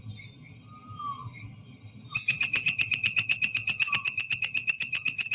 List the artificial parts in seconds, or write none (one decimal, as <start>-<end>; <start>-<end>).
none